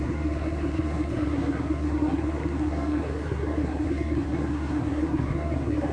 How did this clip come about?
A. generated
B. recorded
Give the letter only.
A